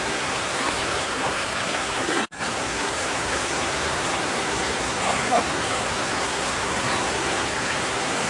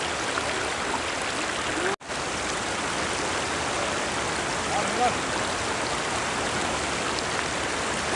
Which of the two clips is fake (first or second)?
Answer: first